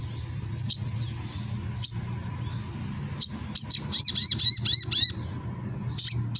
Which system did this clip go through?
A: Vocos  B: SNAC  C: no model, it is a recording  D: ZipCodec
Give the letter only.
C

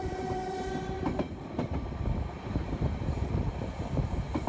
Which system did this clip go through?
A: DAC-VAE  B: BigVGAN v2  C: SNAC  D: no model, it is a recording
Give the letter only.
B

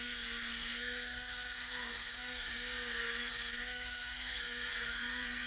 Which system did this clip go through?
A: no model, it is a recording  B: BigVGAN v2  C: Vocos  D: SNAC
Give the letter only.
D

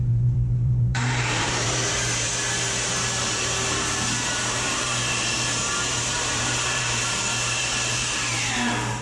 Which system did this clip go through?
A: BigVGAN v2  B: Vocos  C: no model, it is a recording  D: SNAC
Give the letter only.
A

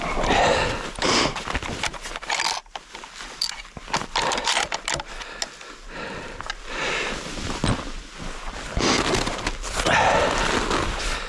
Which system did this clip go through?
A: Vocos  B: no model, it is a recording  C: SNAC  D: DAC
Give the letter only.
B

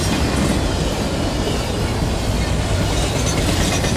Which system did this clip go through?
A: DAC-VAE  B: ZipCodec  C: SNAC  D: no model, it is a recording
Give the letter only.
D